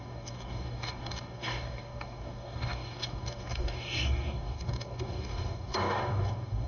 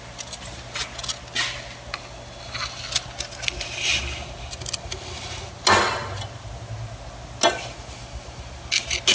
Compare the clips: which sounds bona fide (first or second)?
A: second